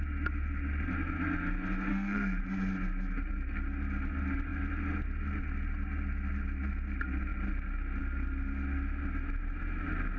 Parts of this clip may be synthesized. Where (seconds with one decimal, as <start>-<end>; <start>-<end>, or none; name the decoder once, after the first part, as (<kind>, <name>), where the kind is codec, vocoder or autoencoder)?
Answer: 1.9-2.4 (codec, SNAC)